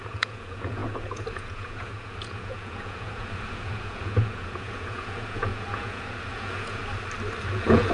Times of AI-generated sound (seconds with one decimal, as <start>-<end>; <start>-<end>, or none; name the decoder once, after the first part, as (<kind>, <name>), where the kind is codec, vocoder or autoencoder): 0.0-6.8 (vocoder, Vocos); 7.4-7.9